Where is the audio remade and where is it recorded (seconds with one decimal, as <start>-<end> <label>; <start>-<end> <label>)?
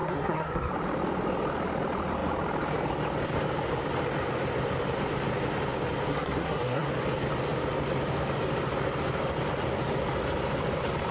0.0-0.7 remade; 0.7-6.1 recorded; 6.1-6.9 remade; 6.9-11.1 recorded